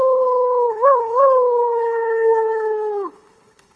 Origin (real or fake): fake